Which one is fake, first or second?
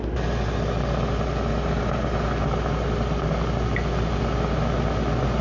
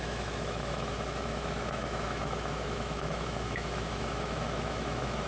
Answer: second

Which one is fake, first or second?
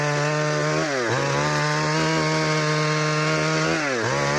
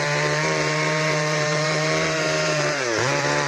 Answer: second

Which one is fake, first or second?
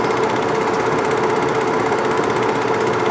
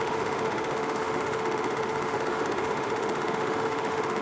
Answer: second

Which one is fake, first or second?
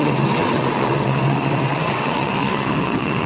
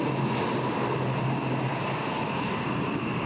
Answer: first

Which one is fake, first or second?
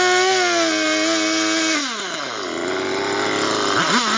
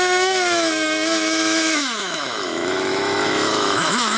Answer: second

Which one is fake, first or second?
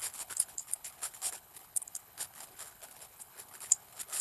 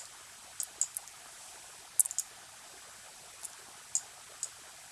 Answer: first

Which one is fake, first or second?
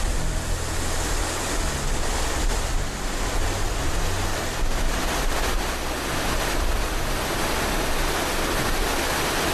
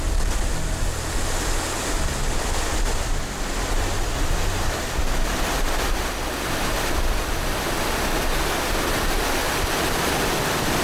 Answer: second